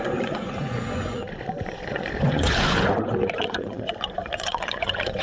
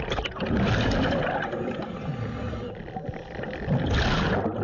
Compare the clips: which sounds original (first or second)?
second